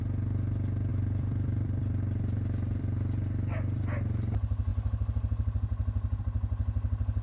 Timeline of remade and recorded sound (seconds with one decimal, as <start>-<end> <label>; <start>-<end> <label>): 0.0-0.9 recorded; 0.9-3.8 remade; 3.8-7.2 recorded